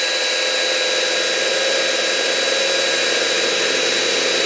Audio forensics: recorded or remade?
recorded